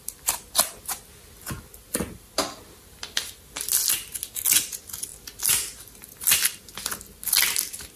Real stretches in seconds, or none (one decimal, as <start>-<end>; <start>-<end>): 0.0-8.0